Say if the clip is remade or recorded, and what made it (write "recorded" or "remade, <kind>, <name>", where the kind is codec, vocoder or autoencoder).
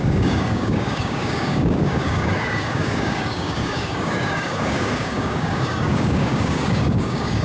remade, codec, DAC